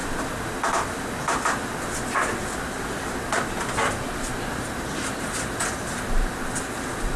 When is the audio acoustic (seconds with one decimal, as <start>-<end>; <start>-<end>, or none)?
0.0-7.2